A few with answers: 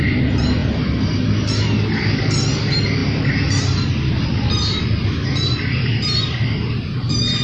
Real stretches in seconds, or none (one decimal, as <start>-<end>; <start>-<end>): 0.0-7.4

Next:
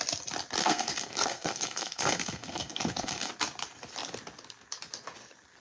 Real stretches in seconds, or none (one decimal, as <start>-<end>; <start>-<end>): 0.0-0.6; 3.3-5.6

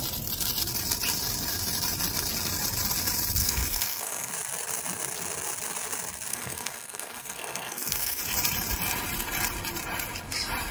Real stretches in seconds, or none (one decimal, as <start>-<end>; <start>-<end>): 0.0-3.4; 4.3-6.3; 8.2-10.7

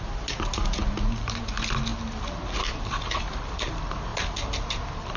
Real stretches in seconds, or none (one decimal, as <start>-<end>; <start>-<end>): 0.0-5.2

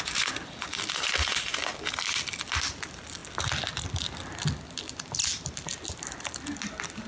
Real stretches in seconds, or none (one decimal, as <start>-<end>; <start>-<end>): 0.0-7.1

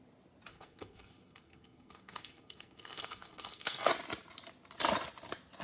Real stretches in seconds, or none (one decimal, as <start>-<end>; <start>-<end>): 0.0-0.5; 3.9-5.6